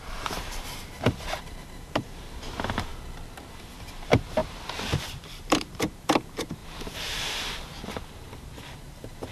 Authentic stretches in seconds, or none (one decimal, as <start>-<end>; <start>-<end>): 2.9-4.0; 6.6-7.9